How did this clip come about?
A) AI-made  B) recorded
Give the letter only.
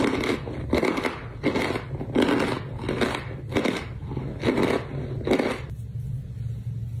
B